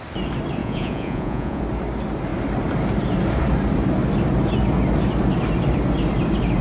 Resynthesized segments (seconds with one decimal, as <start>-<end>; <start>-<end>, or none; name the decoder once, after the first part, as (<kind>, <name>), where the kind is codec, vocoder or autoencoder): 0.6-1.6 (vocoder, Vocos)